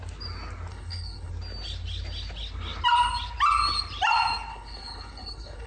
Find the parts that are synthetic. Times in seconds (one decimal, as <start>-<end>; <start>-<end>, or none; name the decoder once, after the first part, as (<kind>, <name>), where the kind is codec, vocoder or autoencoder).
0.7-1.3 (codec, HILCodec); 4.5-5.7